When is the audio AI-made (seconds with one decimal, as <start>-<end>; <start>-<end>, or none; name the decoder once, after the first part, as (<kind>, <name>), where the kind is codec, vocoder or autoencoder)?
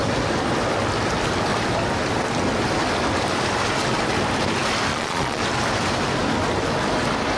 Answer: 4.9-5.4 (vocoder, Vocos)